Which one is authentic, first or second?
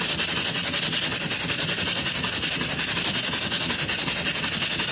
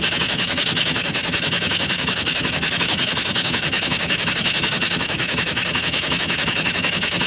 first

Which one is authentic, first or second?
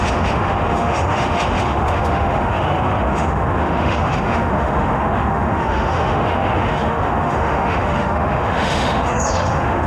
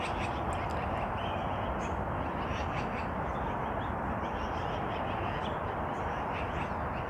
second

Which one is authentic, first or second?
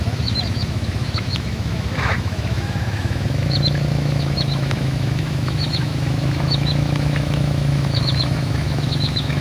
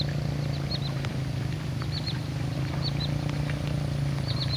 second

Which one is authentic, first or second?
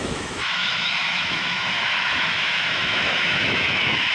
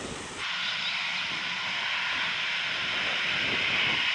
second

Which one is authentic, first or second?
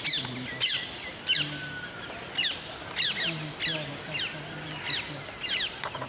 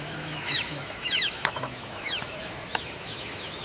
first